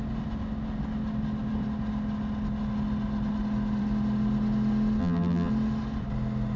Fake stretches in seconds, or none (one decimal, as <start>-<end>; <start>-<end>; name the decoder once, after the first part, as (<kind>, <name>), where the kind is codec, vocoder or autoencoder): 5.0-5.5 (vocoder, BigVGAN v2)